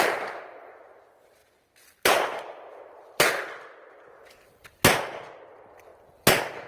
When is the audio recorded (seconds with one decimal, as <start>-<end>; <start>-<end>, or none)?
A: 0.0-1.4; 4.8-6.7